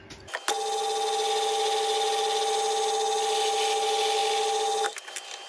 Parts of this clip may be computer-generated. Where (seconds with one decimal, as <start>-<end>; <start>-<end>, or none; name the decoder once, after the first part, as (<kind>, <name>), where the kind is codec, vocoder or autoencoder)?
none